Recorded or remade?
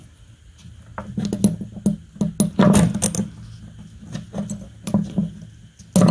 recorded